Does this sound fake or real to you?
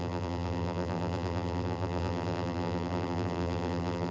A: fake